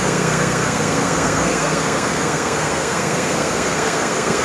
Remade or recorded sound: remade